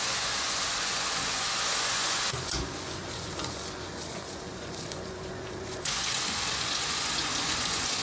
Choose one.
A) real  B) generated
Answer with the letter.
B